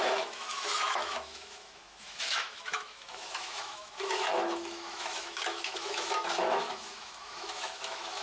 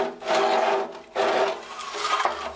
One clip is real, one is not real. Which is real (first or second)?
second